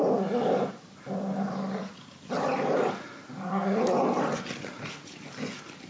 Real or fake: real